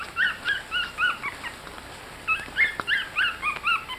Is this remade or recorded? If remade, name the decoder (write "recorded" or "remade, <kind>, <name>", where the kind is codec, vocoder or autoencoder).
recorded